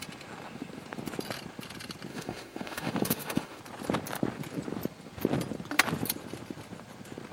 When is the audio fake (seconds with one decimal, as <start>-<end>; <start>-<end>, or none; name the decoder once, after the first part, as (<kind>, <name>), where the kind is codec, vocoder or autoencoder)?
2.1-3.6 (autoencoder, DAC-VAE)